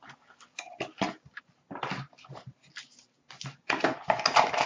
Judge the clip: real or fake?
real